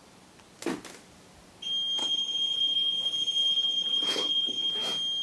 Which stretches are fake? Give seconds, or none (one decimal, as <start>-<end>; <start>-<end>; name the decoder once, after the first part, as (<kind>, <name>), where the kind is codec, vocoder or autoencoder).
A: 2.0-4.7 (codec, HILCodec)